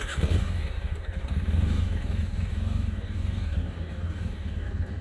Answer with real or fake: fake